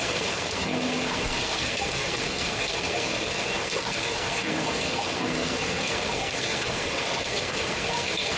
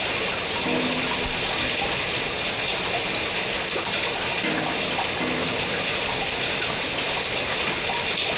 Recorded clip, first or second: second